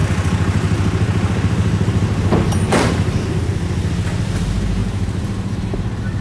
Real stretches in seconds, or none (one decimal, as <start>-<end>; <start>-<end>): 3.4-4.8; 5.6-6.2